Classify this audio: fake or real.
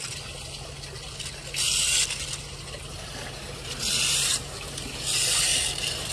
real